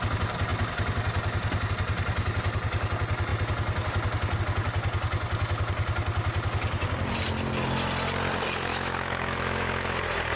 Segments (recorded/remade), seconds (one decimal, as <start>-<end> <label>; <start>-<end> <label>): 0.0-8.7 recorded; 8.7-10.0 remade; 10.0-10.4 recorded